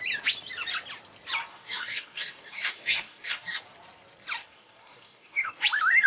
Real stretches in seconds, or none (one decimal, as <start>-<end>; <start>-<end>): 0.0-1.5; 3.6-4.4; 5.5-6.1